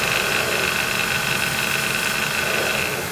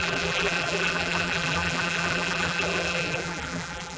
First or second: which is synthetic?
second